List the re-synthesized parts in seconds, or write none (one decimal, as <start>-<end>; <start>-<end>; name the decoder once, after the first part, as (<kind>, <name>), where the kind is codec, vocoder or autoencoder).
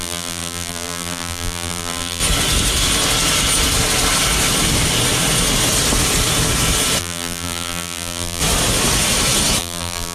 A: 0.0-2.2 (vocoder, BigVGAN v2); 7.0-8.4; 9.6-10.1